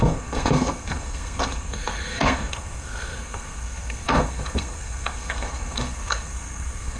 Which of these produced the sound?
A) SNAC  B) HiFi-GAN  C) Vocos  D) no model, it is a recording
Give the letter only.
A